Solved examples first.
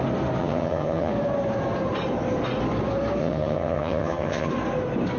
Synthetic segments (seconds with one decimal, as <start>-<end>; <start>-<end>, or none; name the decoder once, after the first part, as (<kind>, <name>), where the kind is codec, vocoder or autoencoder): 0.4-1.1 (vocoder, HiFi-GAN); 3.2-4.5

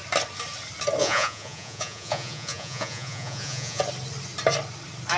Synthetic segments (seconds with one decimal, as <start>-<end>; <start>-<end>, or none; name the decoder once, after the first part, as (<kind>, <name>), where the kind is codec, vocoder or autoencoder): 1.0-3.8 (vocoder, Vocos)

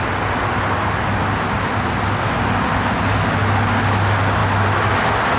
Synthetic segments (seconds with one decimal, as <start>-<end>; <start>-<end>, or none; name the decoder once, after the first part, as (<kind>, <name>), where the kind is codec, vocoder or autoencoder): none

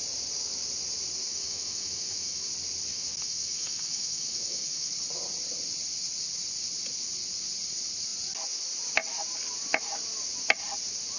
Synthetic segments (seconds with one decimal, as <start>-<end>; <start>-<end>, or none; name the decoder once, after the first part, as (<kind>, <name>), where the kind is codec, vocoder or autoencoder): 1.3-2.5 (autoencoder, DAC-VAE); 2.9-4.9

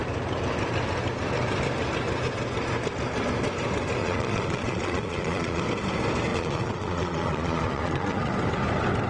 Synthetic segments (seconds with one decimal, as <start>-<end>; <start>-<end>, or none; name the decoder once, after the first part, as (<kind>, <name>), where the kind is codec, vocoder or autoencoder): 4.0-5.6 (vocoder, Vocos); 6.3-8.3

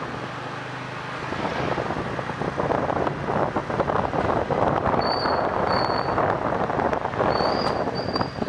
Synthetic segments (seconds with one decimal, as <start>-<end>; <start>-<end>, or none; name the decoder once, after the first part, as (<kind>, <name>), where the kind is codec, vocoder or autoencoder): none

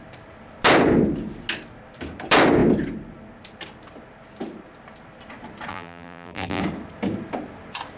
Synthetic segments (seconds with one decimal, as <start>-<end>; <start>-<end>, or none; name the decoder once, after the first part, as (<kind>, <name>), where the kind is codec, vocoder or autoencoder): 5.7-6.6 (vocoder, BigVGAN v2)